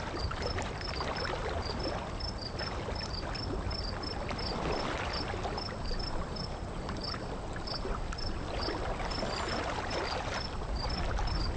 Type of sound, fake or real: real